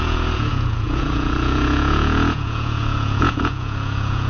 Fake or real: fake